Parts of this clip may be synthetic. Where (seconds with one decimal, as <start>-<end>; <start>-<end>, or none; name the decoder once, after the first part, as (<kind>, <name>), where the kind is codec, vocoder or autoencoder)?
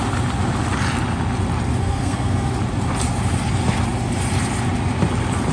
1.8-2.5 (codec, SNAC)